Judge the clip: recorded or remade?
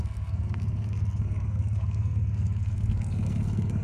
remade